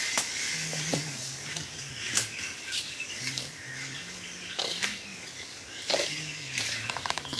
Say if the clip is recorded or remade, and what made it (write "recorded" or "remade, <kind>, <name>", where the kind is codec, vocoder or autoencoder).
remade, codec, DAC